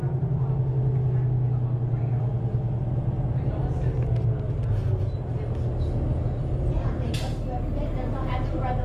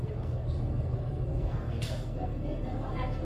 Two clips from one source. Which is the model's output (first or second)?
second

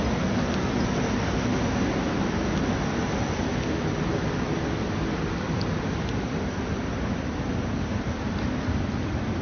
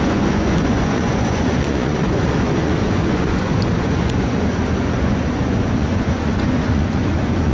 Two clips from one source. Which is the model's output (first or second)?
second